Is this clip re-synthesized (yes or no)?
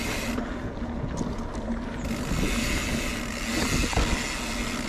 no